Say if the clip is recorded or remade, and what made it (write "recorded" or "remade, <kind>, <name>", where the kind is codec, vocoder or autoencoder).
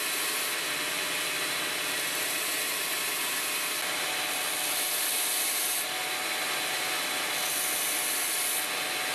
recorded